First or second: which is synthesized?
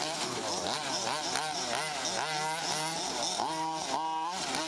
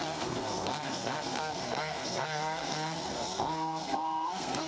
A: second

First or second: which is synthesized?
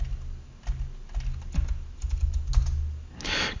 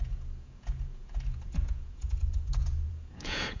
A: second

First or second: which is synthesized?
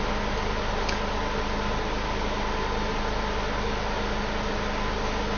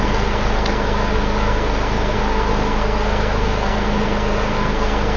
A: second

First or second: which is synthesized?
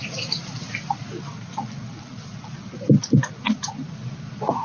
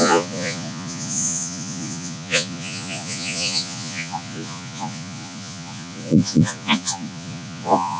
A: second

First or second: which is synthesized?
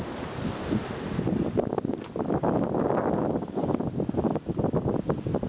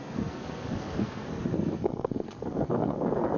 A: second